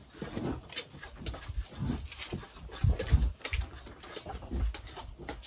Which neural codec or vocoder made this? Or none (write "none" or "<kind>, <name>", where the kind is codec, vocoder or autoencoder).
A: none